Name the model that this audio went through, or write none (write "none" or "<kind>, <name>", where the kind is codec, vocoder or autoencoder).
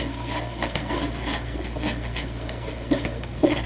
codec, SNAC